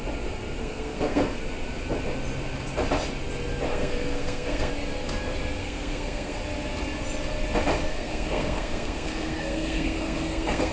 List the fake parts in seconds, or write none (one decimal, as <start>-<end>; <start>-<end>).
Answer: 0.6-1.4; 3.7-4.7; 5.6-6.4; 7.9-10.7

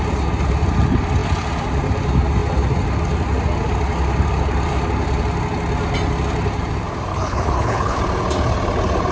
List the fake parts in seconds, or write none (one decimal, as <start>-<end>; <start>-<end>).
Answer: 7.1-8.0